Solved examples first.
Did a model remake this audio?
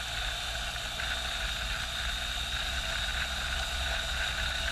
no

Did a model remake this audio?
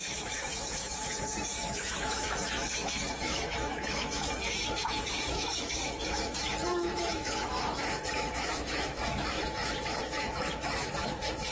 yes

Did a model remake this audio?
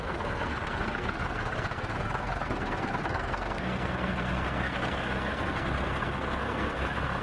yes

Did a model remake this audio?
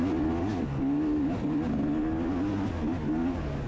no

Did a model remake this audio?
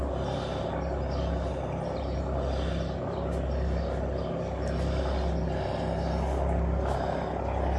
no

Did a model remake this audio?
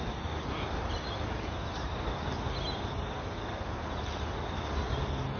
no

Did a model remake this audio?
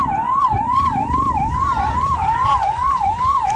yes